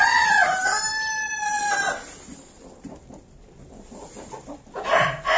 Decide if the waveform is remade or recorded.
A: recorded